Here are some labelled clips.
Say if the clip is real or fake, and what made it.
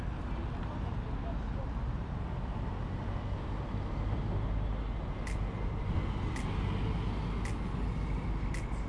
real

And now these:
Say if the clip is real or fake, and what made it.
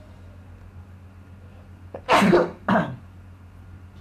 real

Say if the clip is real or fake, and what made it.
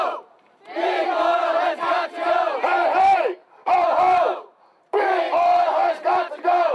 fake, vocoder, BigVGAN v2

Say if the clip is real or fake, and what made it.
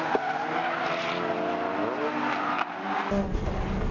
real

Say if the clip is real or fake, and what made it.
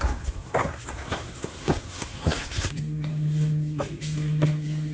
fake, codec, SNAC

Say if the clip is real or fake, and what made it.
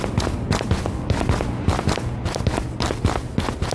real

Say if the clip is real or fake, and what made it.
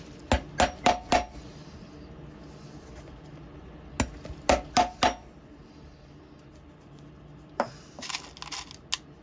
real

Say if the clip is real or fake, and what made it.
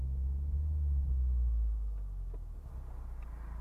real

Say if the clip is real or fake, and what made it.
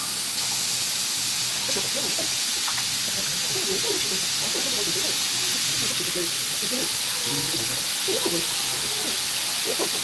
real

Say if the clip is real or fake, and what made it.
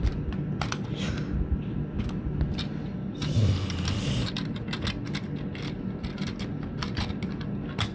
real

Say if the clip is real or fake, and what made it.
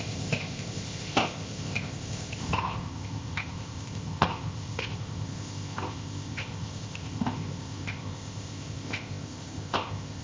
fake, codec, ZipCodec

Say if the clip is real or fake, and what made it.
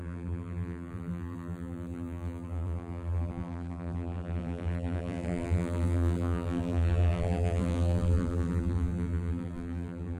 fake, vocoder, BigVGAN v2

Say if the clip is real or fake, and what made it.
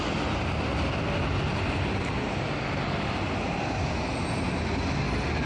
real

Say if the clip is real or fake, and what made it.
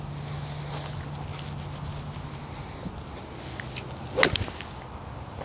real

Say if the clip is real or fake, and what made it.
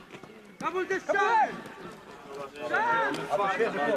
real